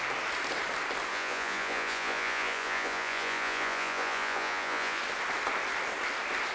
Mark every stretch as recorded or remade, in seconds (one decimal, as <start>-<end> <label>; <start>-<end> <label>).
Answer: 0.0-1.1 recorded; 1.1-5.0 remade; 5.0-6.5 recorded